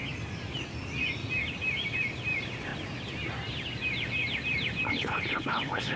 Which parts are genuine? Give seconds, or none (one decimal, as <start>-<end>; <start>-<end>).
0.0-4.9